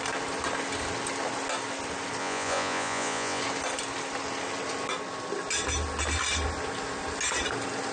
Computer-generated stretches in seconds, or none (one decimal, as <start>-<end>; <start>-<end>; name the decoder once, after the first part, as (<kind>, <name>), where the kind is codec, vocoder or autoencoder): 2.2-3.4 (vocoder, Vocos)